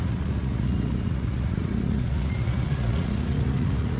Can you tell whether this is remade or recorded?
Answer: remade